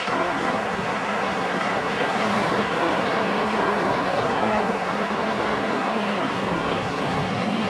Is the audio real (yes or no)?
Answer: no